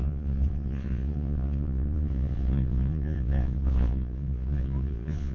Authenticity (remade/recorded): remade